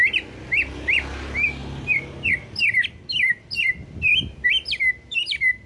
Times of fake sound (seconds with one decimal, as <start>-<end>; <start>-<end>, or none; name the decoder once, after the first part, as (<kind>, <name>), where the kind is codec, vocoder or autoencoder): none